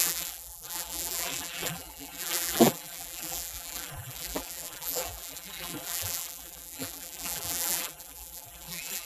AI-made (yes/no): yes